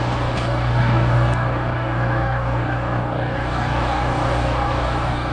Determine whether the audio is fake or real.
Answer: fake